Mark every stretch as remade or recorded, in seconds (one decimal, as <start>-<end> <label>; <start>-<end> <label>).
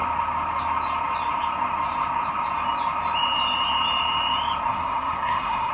0.0-4.7 recorded; 4.7-5.7 remade